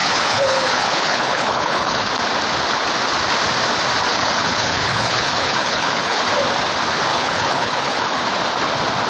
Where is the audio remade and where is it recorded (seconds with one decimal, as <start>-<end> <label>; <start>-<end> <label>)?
0.0-2.1 remade; 2.1-4.1 recorded; 4.1-6.2 remade; 6.2-7.1 recorded; 7.1-8.2 remade; 8.2-9.1 recorded